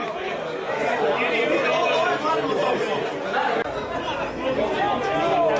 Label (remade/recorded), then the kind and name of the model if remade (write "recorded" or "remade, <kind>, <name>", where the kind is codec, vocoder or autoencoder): recorded